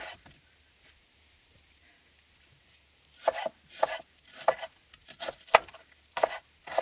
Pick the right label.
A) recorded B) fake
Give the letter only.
A